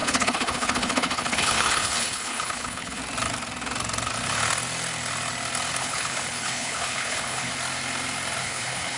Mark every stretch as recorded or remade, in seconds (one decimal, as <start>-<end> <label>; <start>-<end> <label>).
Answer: 0.0-3.0 remade; 3.0-5.8 recorded; 5.8-7.5 remade; 7.5-8.4 recorded; 8.4-9.0 remade